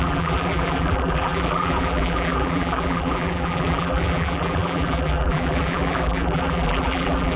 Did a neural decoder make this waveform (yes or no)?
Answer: yes